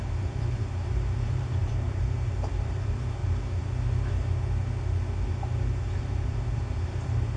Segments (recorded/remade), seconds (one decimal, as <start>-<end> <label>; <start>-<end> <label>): 0.0-3.2 remade; 3.2-6.0 recorded; 6.0-7.4 remade